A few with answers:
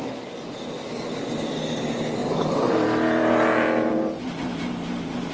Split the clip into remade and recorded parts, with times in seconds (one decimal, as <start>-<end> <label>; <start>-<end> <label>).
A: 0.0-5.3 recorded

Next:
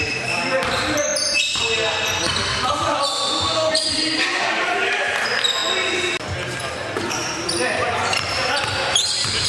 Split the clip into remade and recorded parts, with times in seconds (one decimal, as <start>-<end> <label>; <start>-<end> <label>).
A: 0.0-1.1 remade; 1.1-4.4 recorded; 4.4-5.6 remade; 5.6-7.1 recorded; 7.1-9.5 remade

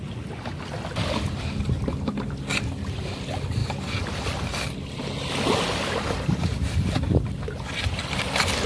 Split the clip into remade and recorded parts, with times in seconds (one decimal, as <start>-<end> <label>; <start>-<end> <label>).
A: 0.0-8.7 recorded

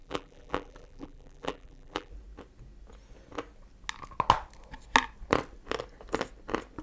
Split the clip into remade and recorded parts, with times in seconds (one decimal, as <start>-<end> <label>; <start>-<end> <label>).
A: 0.0-2.1 remade; 2.1-6.8 recorded

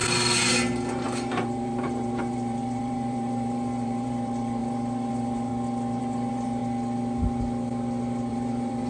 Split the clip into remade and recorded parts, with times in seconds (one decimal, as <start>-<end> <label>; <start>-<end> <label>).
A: 0.0-0.9 recorded; 0.9-5.5 remade; 5.5-6.0 recorded; 6.0-6.6 remade; 6.6-8.3 recorded; 8.3-8.9 remade

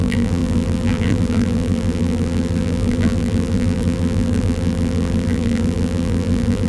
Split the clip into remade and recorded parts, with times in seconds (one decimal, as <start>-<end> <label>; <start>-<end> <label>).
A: 0.0-6.7 remade